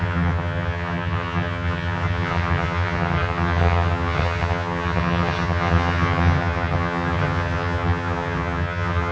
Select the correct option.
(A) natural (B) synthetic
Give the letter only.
B